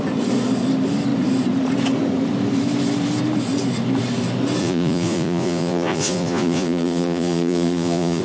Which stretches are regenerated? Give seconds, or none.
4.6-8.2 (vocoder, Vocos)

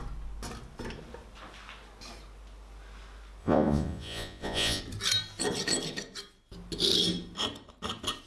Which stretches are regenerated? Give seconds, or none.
3.4-4.8 (vocoder, Vocos)

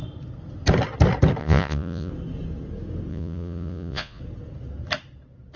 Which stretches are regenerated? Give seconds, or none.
1.4-2.1 (vocoder, Vocos); 3.1-4.2

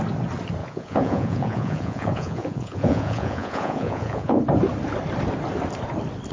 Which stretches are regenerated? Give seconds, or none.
0.6-4.4 (vocoder, Vocos)